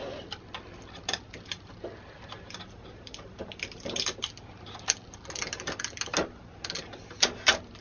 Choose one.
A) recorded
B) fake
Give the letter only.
A